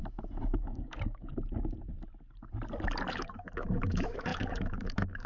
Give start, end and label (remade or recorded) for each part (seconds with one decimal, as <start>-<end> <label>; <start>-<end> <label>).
0.0-0.6 recorded; 0.6-1.3 remade; 1.3-3.1 recorded; 3.1-5.3 remade